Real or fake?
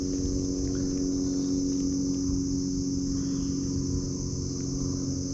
real